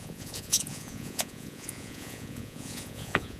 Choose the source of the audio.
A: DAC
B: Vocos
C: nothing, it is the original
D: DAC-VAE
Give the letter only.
B